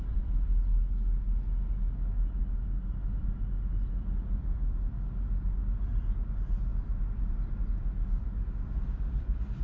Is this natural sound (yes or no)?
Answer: yes